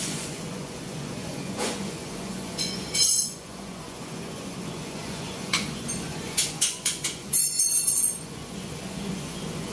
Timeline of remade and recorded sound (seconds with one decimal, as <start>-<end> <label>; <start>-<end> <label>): 0.0-9.7 remade